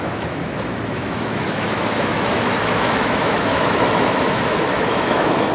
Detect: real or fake fake